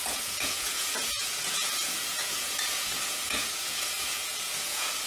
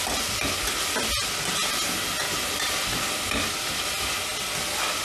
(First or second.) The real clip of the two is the second